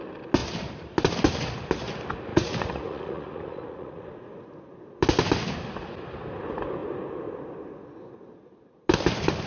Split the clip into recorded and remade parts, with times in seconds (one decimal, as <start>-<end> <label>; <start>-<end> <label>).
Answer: 0.0-2.3 recorded; 2.3-4.3 remade; 4.3-9.5 recorded